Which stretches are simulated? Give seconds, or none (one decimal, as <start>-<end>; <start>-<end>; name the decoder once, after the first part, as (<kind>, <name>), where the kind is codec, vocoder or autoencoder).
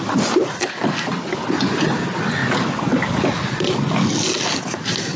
none